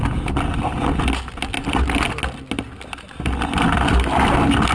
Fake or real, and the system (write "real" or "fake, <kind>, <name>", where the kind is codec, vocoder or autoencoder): real